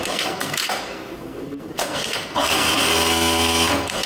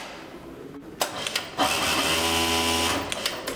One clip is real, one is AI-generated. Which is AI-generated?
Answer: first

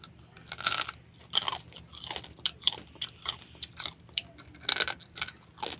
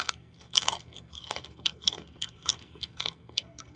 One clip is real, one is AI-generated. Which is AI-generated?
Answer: second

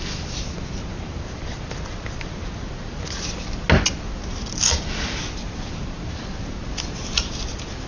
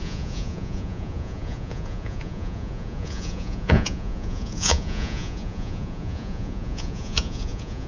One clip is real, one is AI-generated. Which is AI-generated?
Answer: second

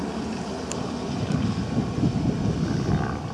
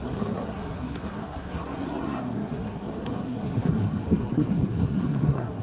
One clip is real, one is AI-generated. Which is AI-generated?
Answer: second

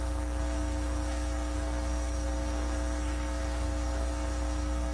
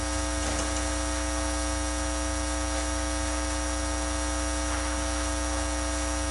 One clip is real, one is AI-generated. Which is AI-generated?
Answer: first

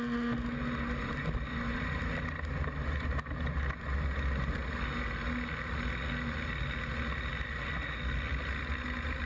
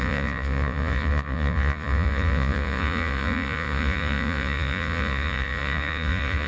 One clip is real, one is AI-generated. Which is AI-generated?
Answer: second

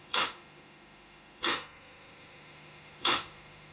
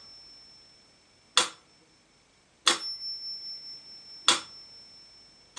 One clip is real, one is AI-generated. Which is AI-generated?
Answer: first